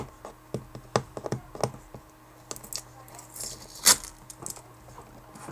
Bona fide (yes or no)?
yes